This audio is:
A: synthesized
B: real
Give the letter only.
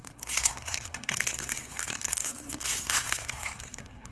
A